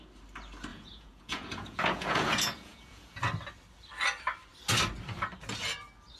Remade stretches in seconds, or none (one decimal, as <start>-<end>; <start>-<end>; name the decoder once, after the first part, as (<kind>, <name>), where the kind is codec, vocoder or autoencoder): 0.7-3.2 (vocoder, Vocos)